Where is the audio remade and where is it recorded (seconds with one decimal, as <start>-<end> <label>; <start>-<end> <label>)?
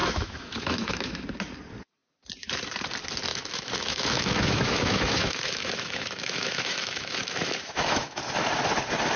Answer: 0.0-1.2 remade; 1.2-3.3 recorded; 3.3-8.2 remade; 8.2-9.2 recorded